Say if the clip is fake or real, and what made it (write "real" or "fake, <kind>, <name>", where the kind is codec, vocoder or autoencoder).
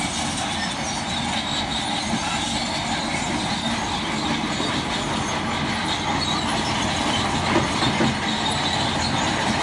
real